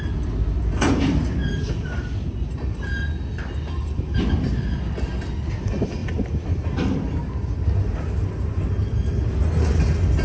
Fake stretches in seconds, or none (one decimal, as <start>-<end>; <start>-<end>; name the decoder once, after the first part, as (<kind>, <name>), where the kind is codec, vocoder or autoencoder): none